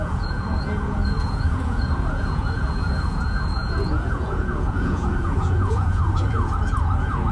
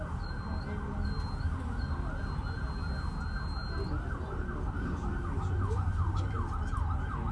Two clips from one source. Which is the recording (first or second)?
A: second